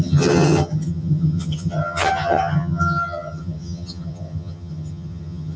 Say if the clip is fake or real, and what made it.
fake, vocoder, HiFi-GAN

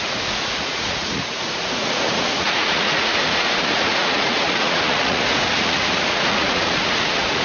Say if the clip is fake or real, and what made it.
fake, vocoder, Vocos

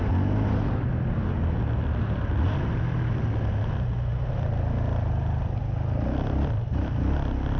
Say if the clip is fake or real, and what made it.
real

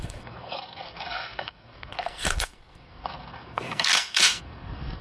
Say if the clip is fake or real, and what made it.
fake, codec, SNAC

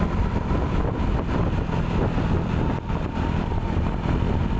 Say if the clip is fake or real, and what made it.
real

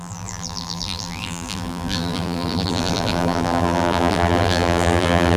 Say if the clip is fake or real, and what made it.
fake, vocoder, BigVGAN v2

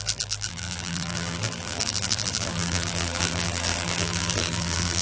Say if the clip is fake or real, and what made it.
fake, vocoder, BigVGAN v2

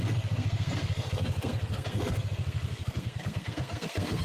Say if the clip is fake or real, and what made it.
fake, codec, SNAC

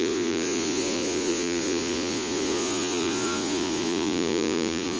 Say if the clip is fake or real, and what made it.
fake, vocoder, Vocos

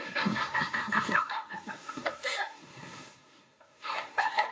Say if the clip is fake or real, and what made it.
fake, codec, SNAC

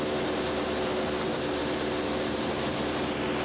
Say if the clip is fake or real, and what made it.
real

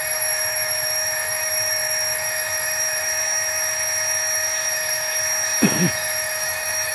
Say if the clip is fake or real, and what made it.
fake, autoencoder, DAC-VAE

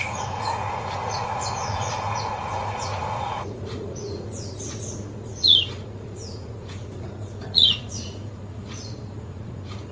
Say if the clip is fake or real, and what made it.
fake, vocoder, Vocos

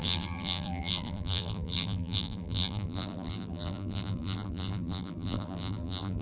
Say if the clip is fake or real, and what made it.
fake, vocoder, BigVGAN v2